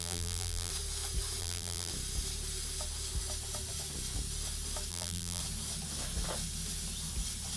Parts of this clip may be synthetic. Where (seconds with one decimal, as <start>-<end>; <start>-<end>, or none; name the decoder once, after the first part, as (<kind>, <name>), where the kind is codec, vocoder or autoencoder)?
0.0-0.7 (vocoder, BigVGAN v2); 1.4-1.9; 4.9-5.4